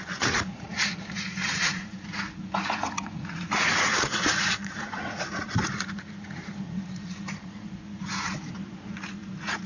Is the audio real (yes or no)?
no